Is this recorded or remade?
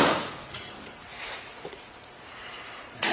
remade